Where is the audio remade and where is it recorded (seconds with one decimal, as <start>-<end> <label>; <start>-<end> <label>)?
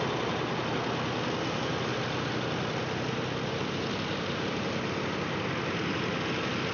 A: 0.0-6.7 recorded